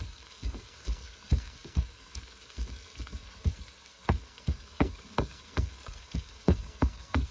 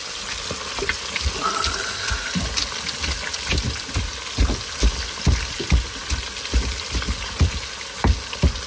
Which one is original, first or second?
second